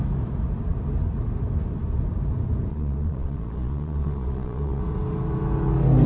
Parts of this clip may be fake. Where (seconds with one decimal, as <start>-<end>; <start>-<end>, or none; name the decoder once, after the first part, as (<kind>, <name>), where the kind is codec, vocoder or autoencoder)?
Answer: 2.7-4.8 (vocoder, Vocos)